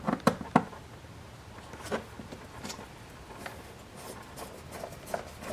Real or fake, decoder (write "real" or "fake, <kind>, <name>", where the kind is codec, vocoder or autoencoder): real